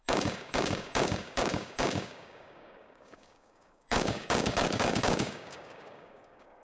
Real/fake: fake